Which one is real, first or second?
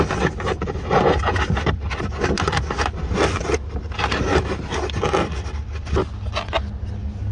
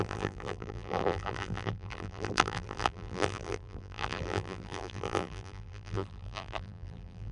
first